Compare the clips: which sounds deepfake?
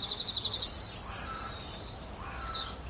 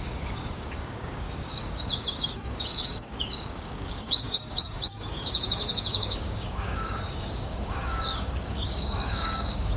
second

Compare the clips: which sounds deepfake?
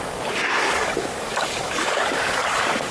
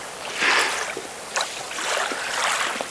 first